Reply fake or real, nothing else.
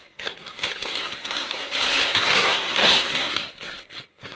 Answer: fake